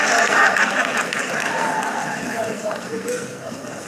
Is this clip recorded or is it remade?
remade